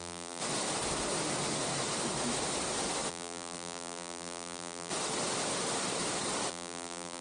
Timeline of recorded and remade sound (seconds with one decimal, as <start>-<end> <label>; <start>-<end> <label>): 0.0-0.4 remade; 0.4-3.1 recorded; 3.1-4.9 remade; 4.9-6.5 recorded; 6.5-7.2 remade

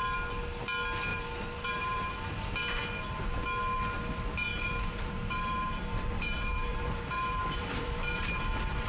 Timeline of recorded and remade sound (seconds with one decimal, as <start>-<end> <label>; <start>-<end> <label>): 0.0-1.1 recorded; 1.1-2.1 remade; 2.1-4.5 recorded; 4.5-8.3 remade; 8.3-8.9 recorded

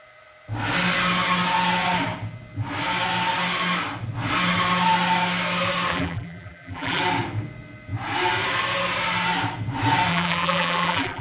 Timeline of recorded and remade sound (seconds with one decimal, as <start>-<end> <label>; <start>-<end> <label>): 0.0-5.9 recorded; 5.9-7.0 remade; 7.0-10.1 recorded; 10.1-11.2 remade

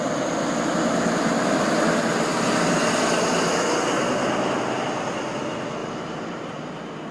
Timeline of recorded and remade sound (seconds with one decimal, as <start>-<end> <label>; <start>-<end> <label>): 0.0-5.8 recorded; 5.8-6.4 remade; 6.4-7.1 recorded

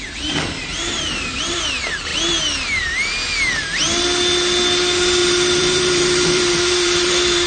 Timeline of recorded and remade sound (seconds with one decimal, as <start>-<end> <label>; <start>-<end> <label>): 0.0-0.7 recorded; 0.7-1.7 remade; 1.7-5.2 recorded; 5.2-7.5 remade

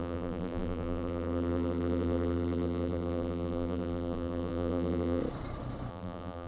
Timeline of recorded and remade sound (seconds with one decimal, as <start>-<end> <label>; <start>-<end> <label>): 0.0-5.2 remade; 5.2-5.9 recorded; 5.9-6.5 remade